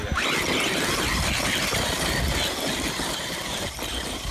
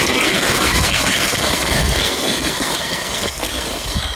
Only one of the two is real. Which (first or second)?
first